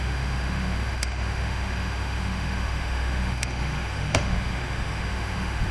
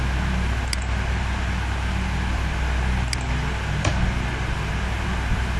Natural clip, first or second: second